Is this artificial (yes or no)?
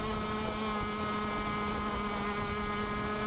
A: no